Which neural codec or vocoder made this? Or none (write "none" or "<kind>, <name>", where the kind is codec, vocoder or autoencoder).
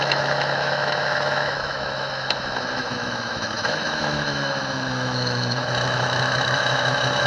autoencoder, DAC-VAE